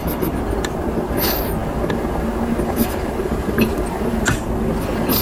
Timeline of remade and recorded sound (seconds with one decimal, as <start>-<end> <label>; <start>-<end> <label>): 0.0-5.2 recorded